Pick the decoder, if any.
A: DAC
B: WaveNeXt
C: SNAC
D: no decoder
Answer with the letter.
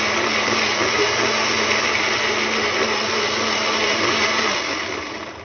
D